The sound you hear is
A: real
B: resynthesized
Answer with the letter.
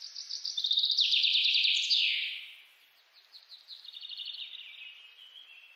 A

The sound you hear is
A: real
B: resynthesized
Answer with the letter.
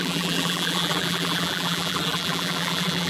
B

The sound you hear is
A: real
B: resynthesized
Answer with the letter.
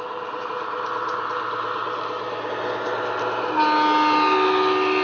A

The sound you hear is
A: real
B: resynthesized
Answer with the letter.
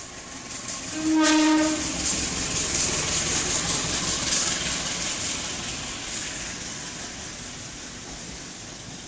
A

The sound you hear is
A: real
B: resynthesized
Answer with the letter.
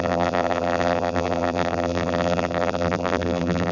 B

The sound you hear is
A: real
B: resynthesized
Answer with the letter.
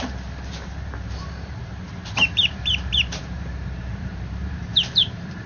B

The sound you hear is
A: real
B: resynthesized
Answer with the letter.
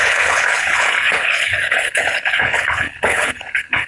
B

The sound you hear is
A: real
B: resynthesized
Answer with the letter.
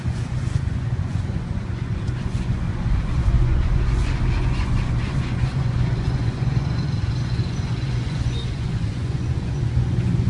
B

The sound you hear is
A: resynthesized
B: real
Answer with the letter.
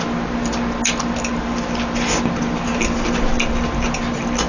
B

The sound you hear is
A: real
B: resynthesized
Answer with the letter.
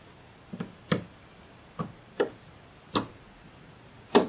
A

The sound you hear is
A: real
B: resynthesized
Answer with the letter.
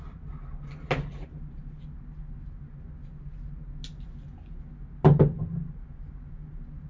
A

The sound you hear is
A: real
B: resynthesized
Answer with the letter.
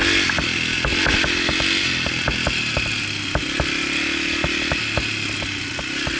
A